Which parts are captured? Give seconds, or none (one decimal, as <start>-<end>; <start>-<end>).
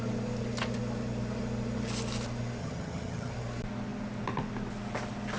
0.0-2.6; 3.3-5.4